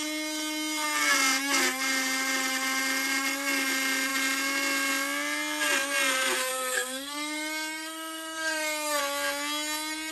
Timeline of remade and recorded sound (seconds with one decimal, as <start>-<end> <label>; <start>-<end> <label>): 0.0-6.5 recorded; 6.5-9.0 remade; 9.0-10.1 recorded